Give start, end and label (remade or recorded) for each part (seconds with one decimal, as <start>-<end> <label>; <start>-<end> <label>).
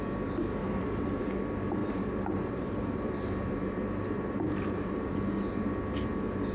0.0-0.6 recorded; 0.6-1.2 remade; 1.2-1.8 recorded; 1.8-5.7 remade; 5.7-6.5 recorded